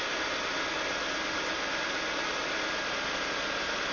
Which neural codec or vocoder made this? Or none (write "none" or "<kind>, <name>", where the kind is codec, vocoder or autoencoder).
none